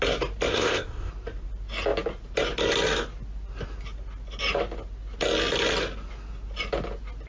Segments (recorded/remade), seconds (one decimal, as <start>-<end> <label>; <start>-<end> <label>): 0.0-0.5 recorded; 0.5-1.1 remade; 1.1-7.3 recorded